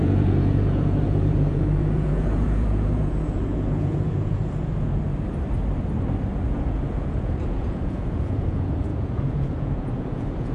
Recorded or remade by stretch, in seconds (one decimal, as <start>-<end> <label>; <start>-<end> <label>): 0.0-5.1 remade; 5.1-6.4 recorded; 6.4-10.5 remade